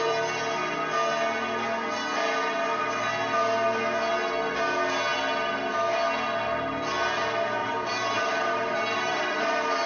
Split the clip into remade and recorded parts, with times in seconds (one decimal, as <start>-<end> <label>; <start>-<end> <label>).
0.0-7.6 recorded; 7.6-9.9 remade